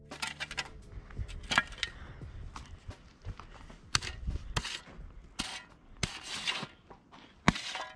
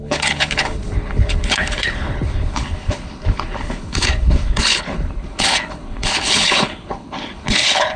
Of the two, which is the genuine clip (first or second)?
first